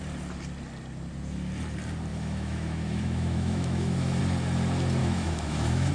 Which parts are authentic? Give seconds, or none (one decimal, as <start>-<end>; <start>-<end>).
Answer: 0.0-2.1; 4.2-5.0